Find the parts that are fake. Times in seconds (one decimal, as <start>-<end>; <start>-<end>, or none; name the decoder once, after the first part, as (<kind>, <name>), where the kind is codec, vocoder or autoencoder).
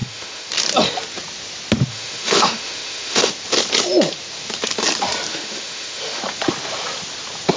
0.0-0.5 (autoencoder, DAC-VAE); 1.9-3.3; 5.3-6.2